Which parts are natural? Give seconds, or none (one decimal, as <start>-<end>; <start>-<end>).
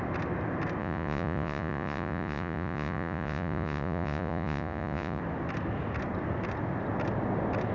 0.0-0.8; 5.2-7.7